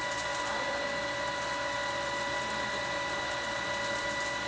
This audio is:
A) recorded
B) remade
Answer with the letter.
A